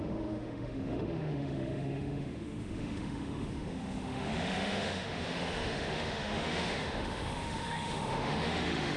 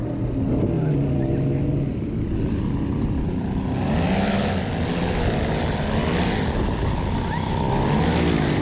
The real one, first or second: second